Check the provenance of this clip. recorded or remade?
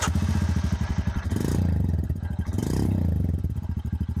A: recorded